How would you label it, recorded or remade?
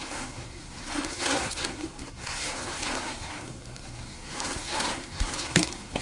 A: remade